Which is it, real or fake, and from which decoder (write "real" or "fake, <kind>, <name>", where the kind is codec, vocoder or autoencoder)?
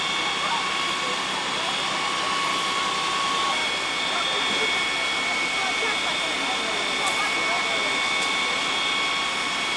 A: real